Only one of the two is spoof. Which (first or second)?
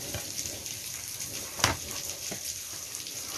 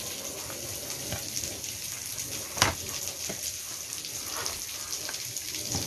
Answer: first